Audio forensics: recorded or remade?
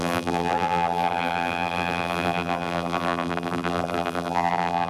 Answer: remade